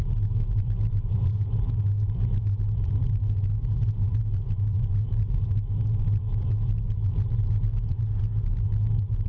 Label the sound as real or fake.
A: fake